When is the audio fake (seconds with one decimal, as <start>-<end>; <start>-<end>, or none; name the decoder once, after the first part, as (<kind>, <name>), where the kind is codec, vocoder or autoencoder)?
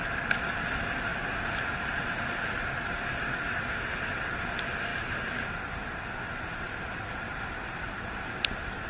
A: none